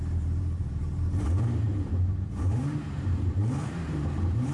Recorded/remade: remade